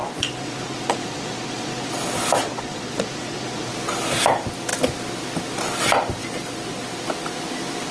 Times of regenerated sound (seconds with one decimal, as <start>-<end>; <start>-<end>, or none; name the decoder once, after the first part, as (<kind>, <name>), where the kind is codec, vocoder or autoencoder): 0.0-1.9 (vocoder, Vocos); 2.4-3.7